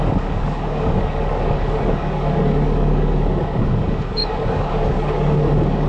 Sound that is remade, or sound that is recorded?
remade